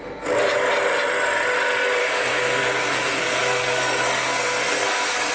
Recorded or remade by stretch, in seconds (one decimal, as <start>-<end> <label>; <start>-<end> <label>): 0.0-2.0 recorded; 2.0-5.3 remade